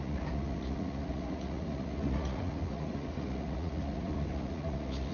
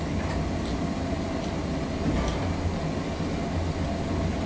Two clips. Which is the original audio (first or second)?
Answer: second